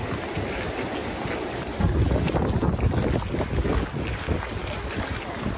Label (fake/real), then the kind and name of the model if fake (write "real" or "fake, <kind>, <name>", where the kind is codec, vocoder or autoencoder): real